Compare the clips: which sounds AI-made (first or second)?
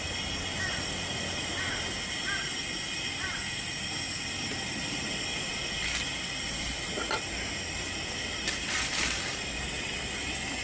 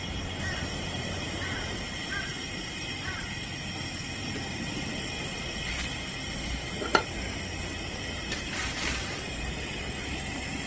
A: second